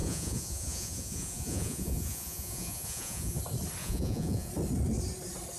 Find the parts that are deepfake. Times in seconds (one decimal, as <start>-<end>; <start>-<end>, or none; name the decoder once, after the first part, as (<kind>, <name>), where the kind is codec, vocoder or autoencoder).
0.0-3.4 (vocoder, Vocos); 3.8-4.5